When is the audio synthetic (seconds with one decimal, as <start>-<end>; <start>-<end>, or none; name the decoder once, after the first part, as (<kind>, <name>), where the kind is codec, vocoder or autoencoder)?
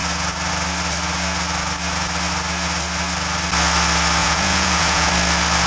4.2-5.1 (vocoder, Vocos)